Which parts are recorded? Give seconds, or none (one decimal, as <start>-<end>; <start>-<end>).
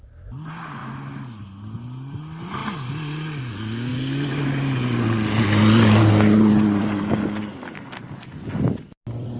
0.0-9.4